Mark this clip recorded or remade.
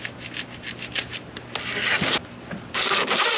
recorded